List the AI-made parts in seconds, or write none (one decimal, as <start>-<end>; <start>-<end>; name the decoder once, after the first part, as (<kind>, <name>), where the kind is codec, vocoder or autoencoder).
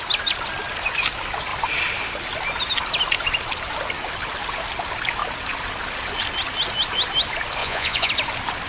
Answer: 7.6-8.1 (vocoder, Vocos)